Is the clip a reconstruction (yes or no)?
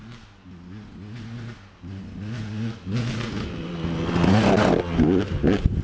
no